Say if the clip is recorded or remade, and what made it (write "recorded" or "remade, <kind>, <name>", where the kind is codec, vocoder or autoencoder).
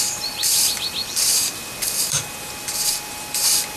remade, vocoder, BigVGAN v2